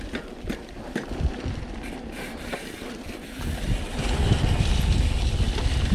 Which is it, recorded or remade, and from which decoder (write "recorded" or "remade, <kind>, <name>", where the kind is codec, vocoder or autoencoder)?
recorded